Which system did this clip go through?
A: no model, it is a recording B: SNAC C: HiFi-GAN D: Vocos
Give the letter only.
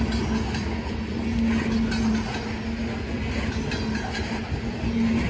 A